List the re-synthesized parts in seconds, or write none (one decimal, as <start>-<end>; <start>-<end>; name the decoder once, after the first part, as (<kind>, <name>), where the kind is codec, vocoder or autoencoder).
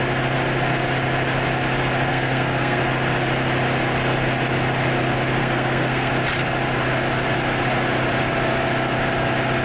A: 2.1-2.8 (codec, SNAC); 5.4-6.1